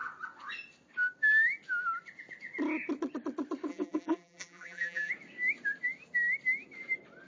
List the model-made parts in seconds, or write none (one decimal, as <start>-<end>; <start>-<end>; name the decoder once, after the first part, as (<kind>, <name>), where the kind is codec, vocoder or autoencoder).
3.7-5.1 (vocoder, BigVGAN v2)